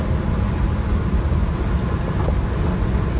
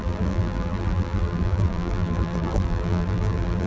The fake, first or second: second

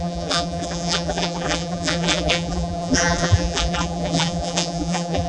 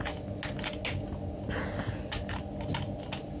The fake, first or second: first